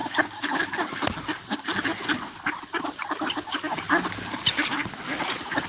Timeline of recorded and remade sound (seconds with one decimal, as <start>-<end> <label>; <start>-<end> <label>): 0.0-0.6 remade; 0.6-5.7 recorded